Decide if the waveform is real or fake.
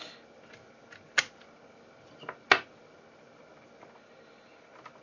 real